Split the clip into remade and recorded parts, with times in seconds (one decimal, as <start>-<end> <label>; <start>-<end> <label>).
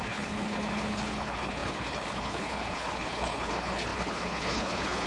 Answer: 0.0-5.1 remade